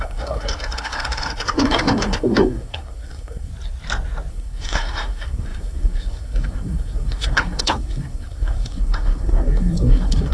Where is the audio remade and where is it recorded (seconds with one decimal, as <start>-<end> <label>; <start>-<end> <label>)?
0.0-3.5 remade; 3.5-4.3 recorded; 4.3-10.3 remade